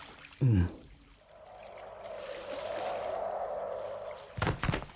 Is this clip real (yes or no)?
yes